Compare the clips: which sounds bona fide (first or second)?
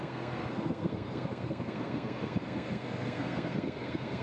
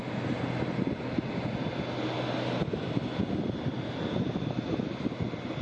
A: second